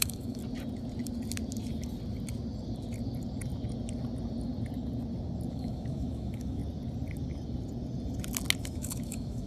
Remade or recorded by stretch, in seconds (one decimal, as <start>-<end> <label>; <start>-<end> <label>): 0.0-0.4 remade; 0.4-5.5 recorded; 5.5-6.6 remade; 6.6-8.6 recorded; 8.6-9.5 remade